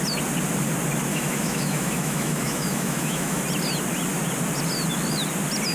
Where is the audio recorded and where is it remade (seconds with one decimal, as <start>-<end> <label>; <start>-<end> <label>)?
0.0-1.1 recorded; 1.1-3.4 remade; 3.4-5.7 recorded